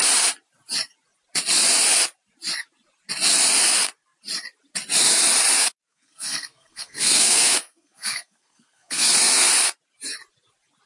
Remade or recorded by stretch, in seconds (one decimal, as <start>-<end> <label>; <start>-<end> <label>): 0.0-5.9 recorded; 5.9-9.5 remade; 9.5-10.9 recorded